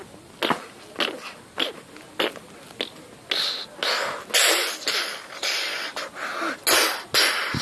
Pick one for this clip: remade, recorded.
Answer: recorded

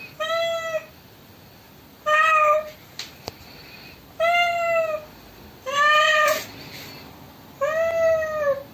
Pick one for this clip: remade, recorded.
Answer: recorded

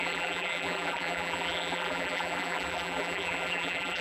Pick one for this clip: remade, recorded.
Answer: remade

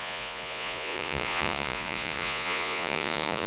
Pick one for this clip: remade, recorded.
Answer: remade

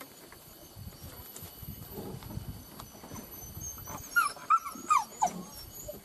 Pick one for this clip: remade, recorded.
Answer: recorded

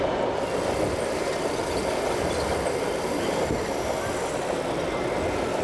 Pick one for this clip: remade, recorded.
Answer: recorded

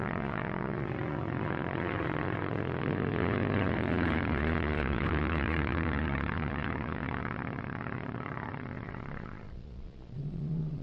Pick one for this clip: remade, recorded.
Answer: remade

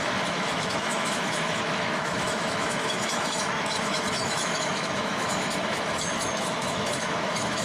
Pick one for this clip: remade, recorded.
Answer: remade